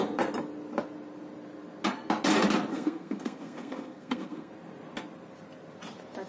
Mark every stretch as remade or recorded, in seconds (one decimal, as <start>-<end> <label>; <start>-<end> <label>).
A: 0.0-2.7 recorded; 2.7-4.5 remade; 4.5-6.3 recorded